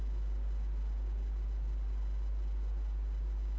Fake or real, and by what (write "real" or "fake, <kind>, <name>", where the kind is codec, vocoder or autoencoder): real